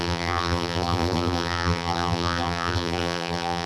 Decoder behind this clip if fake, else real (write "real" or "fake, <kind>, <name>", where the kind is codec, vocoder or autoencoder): fake, vocoder, BigVGAN v2